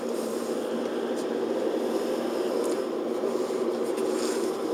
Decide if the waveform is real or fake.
real